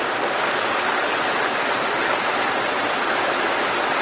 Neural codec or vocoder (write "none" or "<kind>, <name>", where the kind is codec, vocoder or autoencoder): none